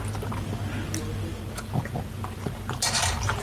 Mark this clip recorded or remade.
recorded